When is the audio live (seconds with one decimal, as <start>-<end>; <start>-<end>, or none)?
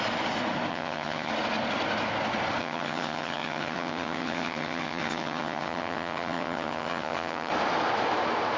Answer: 0.0-0.7; 1.3-2.6; 7.5-8.6